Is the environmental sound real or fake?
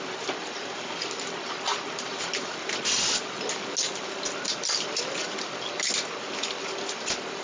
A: real